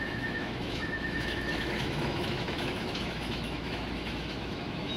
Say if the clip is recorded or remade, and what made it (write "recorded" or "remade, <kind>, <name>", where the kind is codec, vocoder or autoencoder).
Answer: remade, autoencoder, DAC-VAE